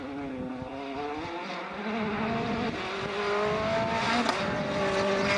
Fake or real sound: real